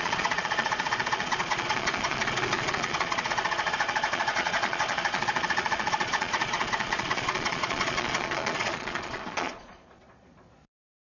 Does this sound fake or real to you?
fake